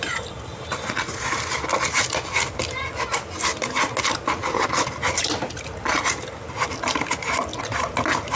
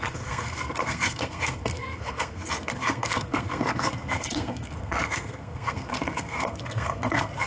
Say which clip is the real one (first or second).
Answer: first